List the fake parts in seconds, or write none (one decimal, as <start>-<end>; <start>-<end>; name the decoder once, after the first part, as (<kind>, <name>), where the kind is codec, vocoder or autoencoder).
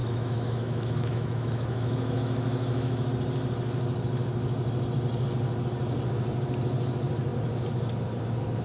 0.0-3.1 (autoencoder, DAC-VAE)